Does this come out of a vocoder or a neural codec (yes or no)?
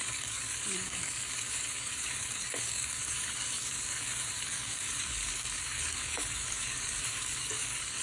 yes